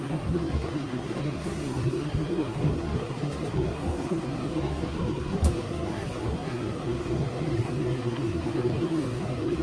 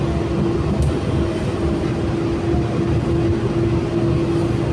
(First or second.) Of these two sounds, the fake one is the first